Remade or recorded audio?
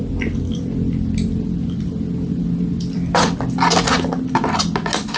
recorded